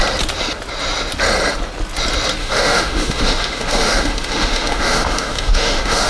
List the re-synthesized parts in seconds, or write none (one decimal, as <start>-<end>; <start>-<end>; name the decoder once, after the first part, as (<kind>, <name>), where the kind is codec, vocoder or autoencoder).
2.4-6.1 (autoencoder, DAC-VAE)